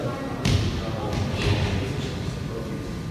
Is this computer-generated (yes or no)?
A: no